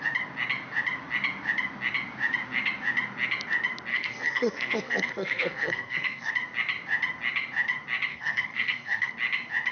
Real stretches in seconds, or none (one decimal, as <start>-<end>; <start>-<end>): 0.0-3.9; 6.3-8.1; 9.1-9.7